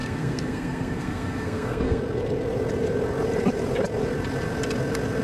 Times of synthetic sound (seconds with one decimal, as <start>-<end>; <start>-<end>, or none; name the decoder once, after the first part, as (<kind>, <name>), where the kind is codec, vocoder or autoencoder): 0.0-2.0 (codec, SNAC)